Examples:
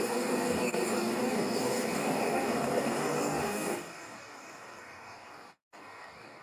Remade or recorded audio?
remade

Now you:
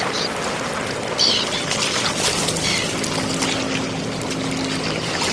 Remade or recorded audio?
recorded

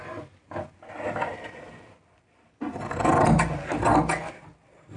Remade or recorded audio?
recorded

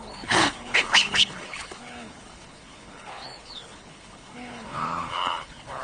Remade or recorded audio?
remade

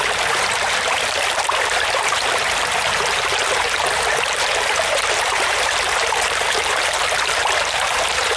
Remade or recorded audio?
remade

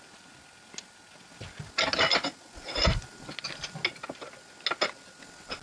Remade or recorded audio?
recorded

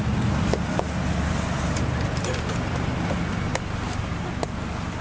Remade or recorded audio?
recorded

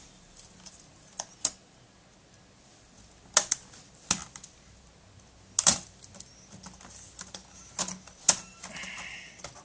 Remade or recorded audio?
recorded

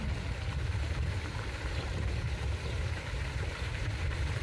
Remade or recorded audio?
remade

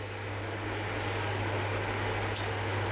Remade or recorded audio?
recorded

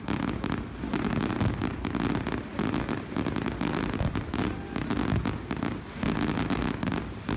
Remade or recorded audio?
recorded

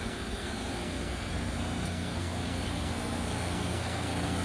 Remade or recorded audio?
remade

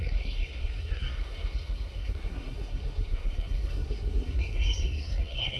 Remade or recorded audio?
remade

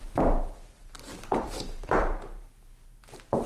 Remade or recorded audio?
remade